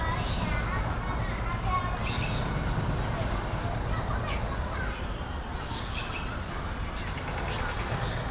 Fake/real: real